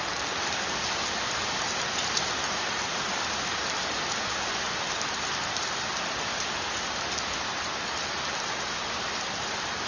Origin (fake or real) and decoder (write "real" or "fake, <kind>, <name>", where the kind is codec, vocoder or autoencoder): real